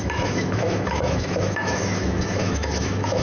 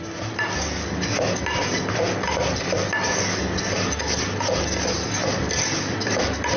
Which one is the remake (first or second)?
first